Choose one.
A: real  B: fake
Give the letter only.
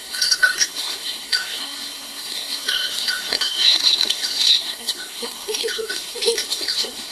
B